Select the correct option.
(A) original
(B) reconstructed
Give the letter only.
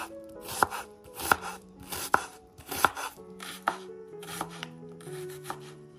B